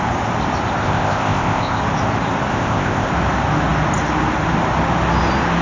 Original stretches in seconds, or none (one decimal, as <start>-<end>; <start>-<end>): 0.0-0.8; 1.8-2.5; 3.1-5.6